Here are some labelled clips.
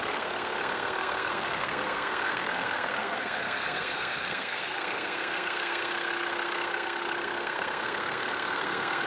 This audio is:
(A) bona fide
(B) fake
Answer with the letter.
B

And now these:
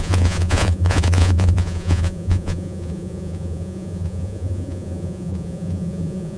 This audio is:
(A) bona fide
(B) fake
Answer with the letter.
B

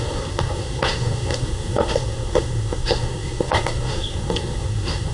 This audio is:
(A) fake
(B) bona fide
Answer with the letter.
A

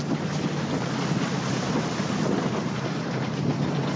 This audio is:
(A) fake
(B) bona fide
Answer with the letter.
A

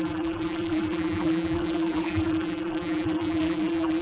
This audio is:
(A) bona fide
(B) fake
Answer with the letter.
B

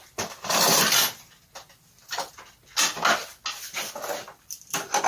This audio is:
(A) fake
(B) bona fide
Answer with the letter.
B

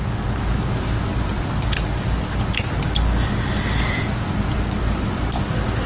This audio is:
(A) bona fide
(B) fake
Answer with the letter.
A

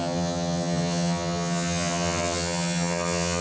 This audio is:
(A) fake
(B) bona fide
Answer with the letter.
A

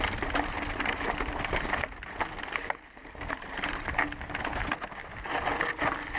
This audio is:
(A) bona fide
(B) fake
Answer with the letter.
A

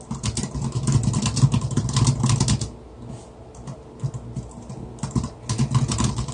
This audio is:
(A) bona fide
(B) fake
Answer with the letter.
A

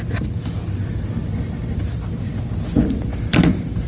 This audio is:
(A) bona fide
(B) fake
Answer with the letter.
A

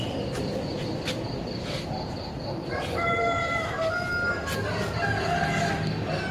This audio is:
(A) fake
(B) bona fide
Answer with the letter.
B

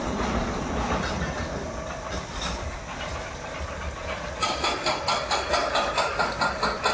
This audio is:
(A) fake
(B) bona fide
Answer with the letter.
B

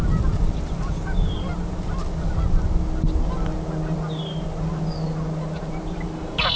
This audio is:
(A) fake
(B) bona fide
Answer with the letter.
B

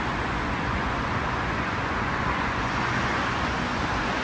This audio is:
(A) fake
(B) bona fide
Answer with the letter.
A